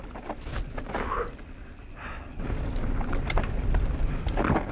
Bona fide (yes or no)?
yes